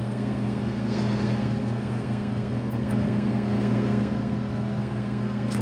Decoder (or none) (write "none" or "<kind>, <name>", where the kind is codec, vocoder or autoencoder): codec, SNAC